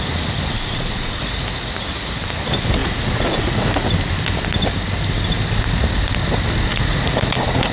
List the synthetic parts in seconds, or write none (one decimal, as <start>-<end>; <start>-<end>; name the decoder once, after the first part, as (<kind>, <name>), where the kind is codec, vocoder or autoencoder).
0.5-1.2 (vocoder, Vocos); 2.8-3.9; 6.7-7.7